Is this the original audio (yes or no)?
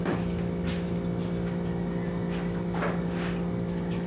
no